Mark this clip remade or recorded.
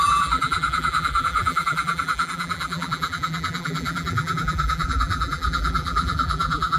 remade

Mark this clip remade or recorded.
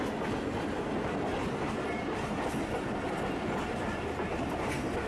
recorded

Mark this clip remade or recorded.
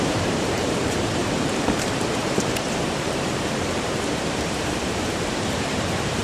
remade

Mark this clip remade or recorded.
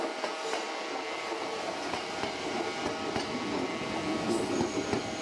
recorded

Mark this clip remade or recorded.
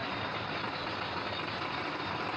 recorded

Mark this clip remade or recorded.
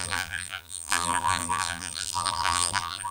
remade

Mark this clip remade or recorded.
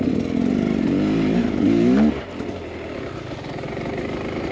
recorded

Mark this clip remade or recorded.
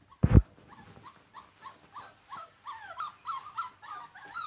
recorded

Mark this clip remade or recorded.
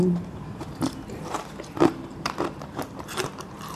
remade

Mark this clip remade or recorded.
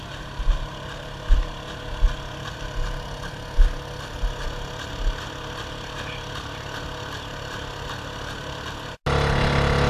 recorded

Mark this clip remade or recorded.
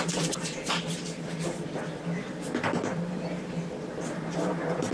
remade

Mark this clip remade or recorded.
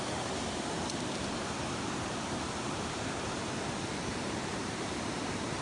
remade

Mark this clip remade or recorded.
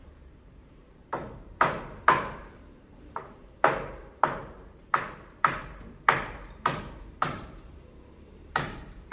remade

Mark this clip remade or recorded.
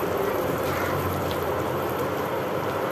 remade